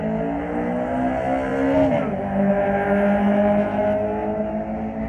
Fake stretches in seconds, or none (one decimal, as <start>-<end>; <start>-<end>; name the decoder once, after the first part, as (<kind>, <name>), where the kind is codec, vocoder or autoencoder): none